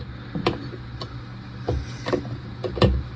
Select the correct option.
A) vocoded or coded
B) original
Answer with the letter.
B